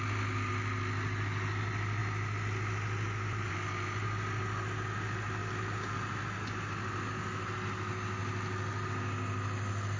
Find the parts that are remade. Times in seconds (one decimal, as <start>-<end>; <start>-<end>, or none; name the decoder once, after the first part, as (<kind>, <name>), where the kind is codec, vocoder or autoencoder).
none